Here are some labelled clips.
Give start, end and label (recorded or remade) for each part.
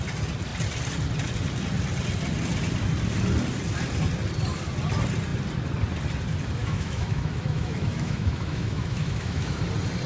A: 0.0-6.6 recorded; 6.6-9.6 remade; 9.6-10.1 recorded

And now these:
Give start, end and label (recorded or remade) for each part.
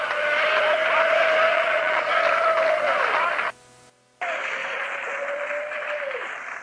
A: 0.0-1.5 recorded; 1.5-2.1 remade; 2.1-4.6 recorded; 4.6-5.1 remade; 5.1-6.6 recorded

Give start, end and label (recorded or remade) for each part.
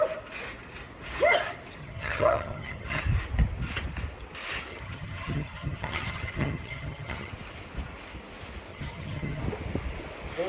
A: 0.0-1.8 recorded; 1.8-3.0 remade; 3.0-4.7 recorded; 4.7-7.3 remade; 7.3-8.7 recorded; 8.7-9.4 remade; 9.4-10.5 recorded